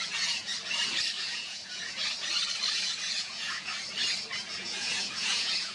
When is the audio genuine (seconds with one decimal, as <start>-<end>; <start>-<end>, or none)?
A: 0.5-1.2; 2.0-2.7; 3.7-4.6